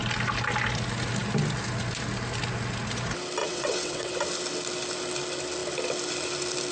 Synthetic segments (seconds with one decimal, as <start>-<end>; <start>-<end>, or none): 3.4-4.2